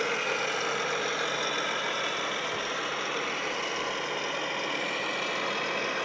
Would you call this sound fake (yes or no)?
no